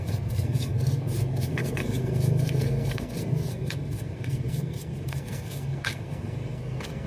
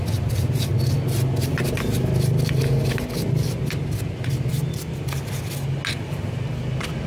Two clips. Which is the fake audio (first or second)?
first